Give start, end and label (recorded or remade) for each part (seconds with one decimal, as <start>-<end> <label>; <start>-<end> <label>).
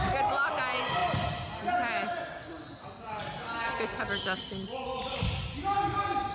0.0-6.3 recorded